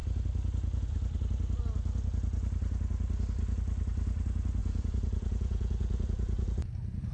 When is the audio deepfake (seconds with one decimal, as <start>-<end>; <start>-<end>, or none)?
4.6-6.6